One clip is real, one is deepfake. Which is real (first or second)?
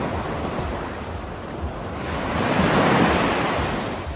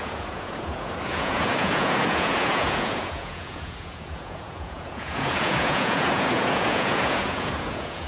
first